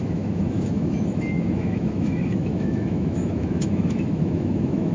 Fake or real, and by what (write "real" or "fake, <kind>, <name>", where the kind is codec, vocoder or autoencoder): fake, autoencoder, DAC-VAE